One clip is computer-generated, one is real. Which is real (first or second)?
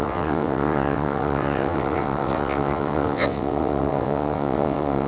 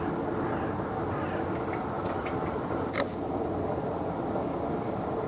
second